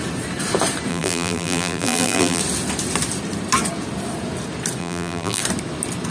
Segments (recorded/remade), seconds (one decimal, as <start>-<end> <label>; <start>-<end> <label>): 0.0-0.9 recorded; 0.9-2.4 remade; 2.4-4.8 recorded; 4.8-5.4 remade; 5.4-6.1 recorded